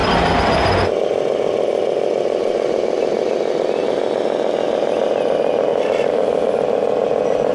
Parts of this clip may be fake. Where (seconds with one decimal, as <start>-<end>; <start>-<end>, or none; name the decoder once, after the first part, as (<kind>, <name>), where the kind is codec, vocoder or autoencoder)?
2.4-4.0 (vocoder, BigVGAN v2); 5.7-6.5